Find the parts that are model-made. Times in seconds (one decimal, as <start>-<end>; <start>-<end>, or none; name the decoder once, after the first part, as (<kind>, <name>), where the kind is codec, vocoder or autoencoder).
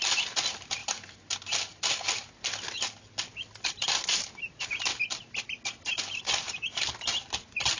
none